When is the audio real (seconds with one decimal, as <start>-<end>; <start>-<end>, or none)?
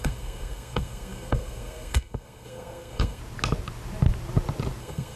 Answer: 3.2-4.8